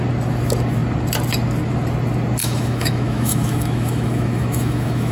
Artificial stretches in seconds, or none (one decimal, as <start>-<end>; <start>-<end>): 2.4-5.1